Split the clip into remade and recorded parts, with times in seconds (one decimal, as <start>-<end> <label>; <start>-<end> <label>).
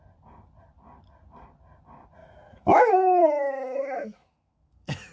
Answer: 0.0-2.2 recorded; 2.2-5.1 remade